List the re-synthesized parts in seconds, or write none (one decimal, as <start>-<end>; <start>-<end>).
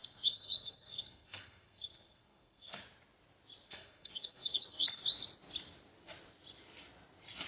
0.0-2.8; 3.7-5.0